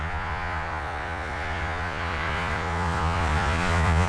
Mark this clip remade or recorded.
remade